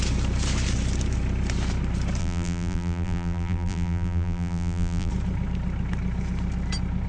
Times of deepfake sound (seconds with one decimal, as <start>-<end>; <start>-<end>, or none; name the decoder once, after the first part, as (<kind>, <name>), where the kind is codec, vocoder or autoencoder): 2.2-5.1 (vocoder, BigVGAN v2)